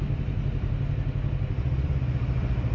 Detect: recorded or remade recorded